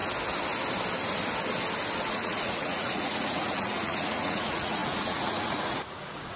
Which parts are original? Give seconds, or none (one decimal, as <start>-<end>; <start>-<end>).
0.0-2.0